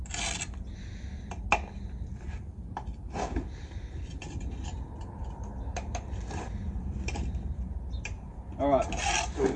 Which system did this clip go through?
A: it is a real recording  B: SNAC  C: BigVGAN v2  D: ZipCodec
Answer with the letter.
A